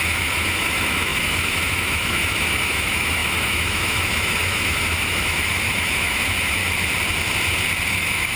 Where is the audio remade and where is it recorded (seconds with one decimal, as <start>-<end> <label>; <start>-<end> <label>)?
0.0-6.6 remade; 6.6-7.9 recorded; 7.9-8.4 remade